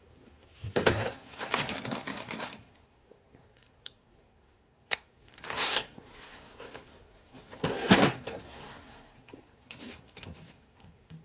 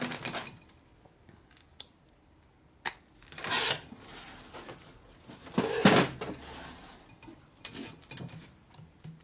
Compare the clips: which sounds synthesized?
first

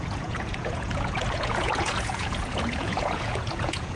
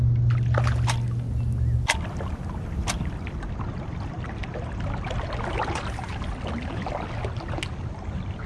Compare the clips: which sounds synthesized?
first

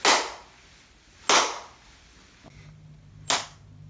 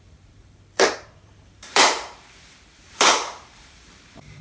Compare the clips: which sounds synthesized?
second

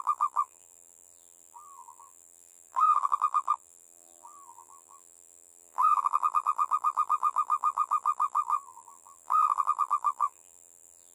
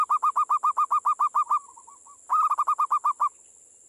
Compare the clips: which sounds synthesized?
first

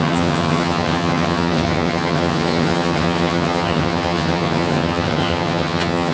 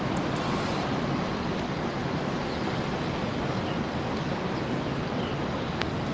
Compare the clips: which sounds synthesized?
first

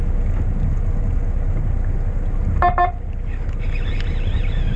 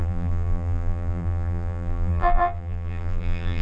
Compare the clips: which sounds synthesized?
second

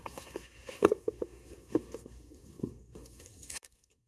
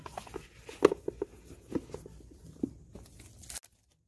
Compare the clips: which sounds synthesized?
first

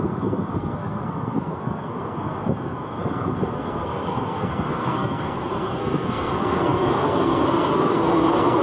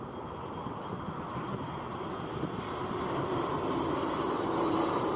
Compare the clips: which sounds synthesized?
first